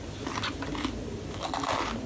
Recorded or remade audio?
recorded